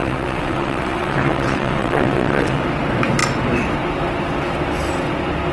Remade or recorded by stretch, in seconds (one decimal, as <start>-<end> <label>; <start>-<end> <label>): 0.0-2.6 remade; 2.6-5.5 recorded